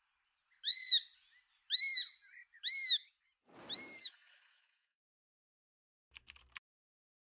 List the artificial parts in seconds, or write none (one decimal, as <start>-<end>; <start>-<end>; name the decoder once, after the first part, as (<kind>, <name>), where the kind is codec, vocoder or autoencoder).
4.0-6.0 (autoencoder, DAC-VAE)